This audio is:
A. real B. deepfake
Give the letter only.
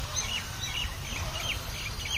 A